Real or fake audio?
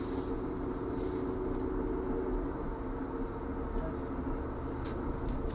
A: real